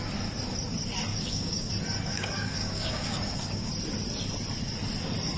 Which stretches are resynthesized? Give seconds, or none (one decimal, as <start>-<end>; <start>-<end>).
1.1-1.7; 2.1-3.7